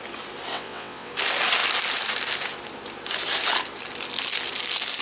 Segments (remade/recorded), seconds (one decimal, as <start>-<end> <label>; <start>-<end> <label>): 0.0-0.5 recorded; 0.5-1.1 remade; 1.1-5.0 recorded